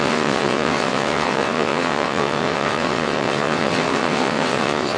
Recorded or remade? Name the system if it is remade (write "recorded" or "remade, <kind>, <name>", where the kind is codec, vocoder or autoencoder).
remade, vocoder, WaveNeXt